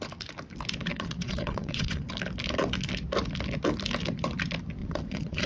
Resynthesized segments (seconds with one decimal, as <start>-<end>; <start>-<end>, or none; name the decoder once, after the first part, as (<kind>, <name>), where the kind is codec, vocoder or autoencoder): 0.9-2.1 (vocoder, Vocos); 4.8-5.5